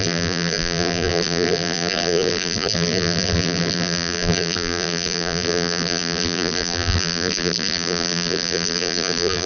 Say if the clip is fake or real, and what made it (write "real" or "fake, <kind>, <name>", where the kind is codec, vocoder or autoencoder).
fake, vocoder, BigVGAN v2